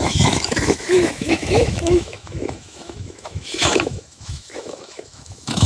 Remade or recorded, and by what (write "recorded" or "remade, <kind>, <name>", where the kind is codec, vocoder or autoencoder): remade, autoencoder, DAC-VAE